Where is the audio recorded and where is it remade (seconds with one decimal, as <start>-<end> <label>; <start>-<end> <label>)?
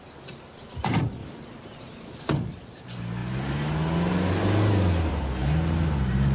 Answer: 0.0-6.3 recorded